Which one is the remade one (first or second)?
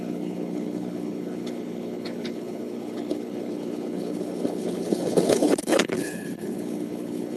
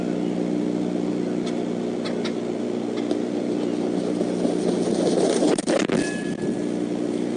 first